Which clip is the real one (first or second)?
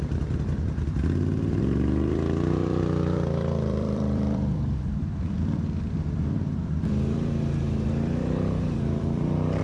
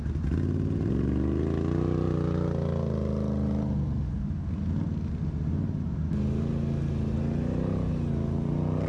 second